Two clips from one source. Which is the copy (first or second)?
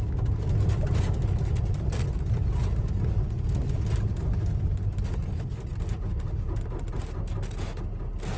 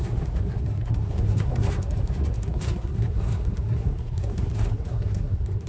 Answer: second